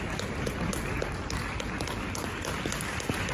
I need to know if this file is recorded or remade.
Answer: recorded